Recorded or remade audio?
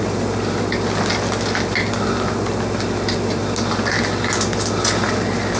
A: recorded